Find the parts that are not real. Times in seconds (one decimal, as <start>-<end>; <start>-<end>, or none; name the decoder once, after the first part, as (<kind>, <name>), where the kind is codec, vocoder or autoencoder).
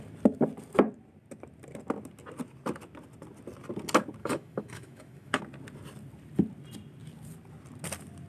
4.2-5.4 (autoencoder, DAC-VAE)